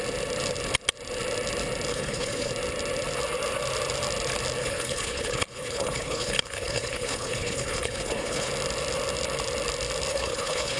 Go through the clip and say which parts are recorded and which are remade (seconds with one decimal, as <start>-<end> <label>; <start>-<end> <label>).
0.0-1.9 recorded; 1.9-2.5 remade; 2.5-4.6 recorded; 4.6-8.5 remade; 8.5-10.1 recorded; 10.1-10.8 remade